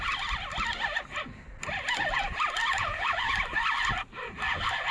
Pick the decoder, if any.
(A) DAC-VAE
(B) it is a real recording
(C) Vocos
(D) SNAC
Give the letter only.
B